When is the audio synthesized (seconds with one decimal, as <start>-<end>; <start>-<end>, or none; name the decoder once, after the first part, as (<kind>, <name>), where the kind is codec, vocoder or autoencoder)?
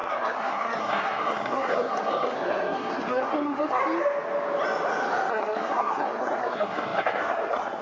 0.0-3.8 (codec, SNAC); 5.3-7.8